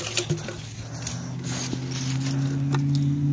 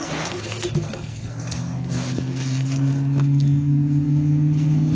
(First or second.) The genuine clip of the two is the first